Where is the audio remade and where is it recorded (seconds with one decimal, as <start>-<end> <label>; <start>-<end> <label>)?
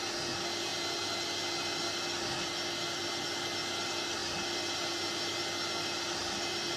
0.0-6.8 recorded